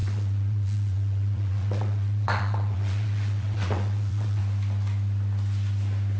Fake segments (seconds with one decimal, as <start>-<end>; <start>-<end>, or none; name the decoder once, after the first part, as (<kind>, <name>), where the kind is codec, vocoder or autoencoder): 0.0-4.4 (vocoder, WaveNeXt)